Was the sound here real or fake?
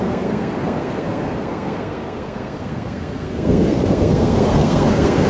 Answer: fake